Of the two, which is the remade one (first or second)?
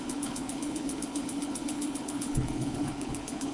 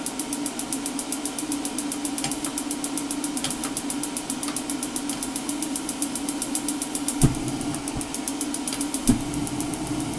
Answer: first